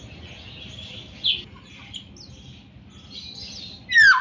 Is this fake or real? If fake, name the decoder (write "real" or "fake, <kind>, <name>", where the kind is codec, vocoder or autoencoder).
real